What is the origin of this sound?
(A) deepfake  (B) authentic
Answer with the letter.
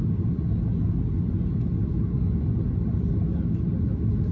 B